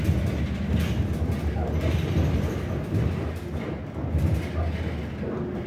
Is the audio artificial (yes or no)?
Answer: no